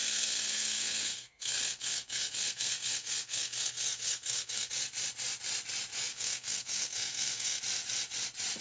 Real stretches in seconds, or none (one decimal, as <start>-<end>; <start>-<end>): 4.7-6.1; 7.6-8.6